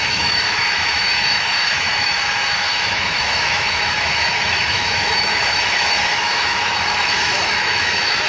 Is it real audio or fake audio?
fake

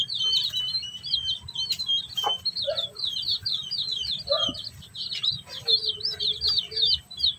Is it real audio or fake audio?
real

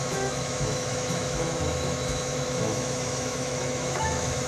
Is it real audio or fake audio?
fake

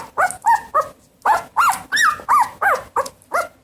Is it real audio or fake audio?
real